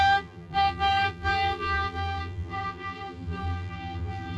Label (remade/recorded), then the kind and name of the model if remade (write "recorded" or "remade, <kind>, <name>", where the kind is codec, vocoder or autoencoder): remade, vocoder, BigVGAN v2